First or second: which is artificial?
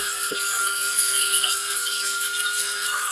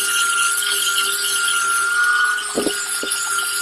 first